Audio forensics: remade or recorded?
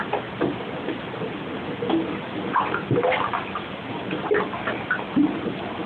recorded